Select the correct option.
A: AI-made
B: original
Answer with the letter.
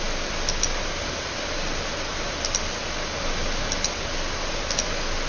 B